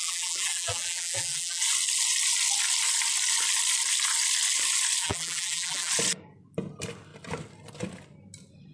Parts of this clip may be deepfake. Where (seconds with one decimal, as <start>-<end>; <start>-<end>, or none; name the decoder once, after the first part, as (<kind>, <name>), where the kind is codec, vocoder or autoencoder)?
0.0-1.6 (vocoder, BigVGAN v2); 5.0-5.9